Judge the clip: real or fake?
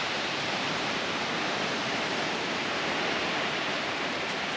fake